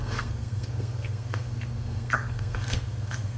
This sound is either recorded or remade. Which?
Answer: remade